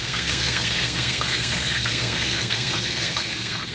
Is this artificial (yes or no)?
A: yes